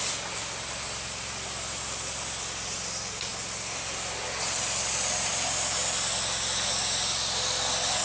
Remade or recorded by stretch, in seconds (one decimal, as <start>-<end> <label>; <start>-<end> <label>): 0.0-8.0 recorded